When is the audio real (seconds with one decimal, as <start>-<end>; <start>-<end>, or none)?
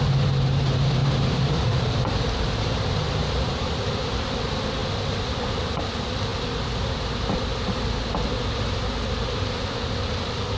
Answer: 0.0-1.0; 3.5-4.8; 5.6-6.3; 8.7-10.6